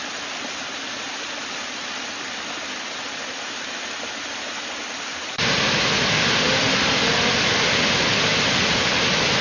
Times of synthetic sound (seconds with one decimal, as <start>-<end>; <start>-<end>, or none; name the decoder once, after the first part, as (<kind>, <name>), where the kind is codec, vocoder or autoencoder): none

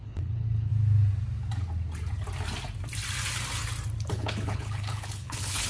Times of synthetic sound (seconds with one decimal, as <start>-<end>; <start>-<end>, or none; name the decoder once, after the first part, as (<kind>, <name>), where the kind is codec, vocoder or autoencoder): 0.0-0.7 (codec, HILCodec); 4.1-5.7

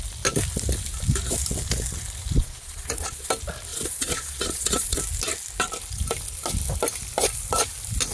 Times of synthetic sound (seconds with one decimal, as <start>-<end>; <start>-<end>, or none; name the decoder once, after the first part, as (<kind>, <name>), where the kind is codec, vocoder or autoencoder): 2.4-3.3 (vocoder, Vocos); 3.7-5.0

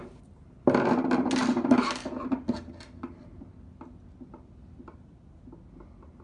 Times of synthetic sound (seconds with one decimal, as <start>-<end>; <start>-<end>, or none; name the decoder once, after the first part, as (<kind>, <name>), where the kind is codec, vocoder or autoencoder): none

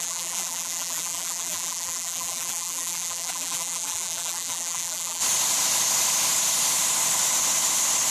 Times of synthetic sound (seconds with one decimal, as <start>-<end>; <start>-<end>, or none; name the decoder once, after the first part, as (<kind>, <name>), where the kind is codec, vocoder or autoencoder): 0.0-5.2 (vocoder, BigVGAN v2)